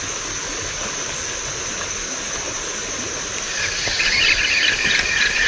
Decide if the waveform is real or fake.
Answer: real